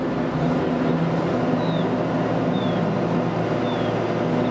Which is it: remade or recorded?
recorded